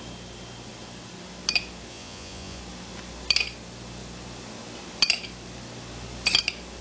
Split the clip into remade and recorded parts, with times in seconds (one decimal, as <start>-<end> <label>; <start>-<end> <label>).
0.0-1.9 recorded; 1.9-2.6 remade; 2.6-6.8 recorded

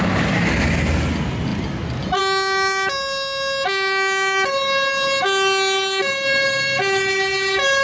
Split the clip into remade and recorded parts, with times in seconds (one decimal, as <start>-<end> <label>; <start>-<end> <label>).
0.0-7.8 recorded

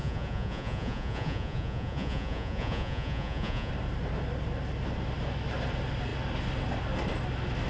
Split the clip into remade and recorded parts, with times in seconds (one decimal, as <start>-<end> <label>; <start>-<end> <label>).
0.0-3.7 remade; 3.7-7.7 recorded

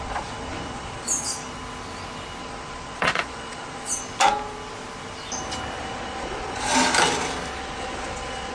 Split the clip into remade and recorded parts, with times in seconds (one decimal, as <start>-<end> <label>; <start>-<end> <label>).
0.0-1.4 remade; 1.4-2.4 recorded; 2.4-4.0 remade; 4.0-5.8 recorded; 5.8-6.7 remade; 6.7-7.6 recorded; 7.6-8.5 remade